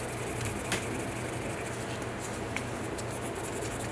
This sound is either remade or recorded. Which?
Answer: recorded